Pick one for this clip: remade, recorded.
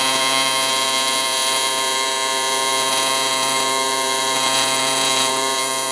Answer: remade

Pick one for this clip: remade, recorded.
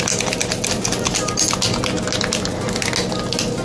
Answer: recorded